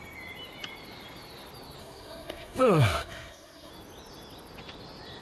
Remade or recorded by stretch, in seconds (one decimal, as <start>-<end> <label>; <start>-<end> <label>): 0.0-1.8 recorded; 1.8-3.7 remade; 3.7-5.2 recorded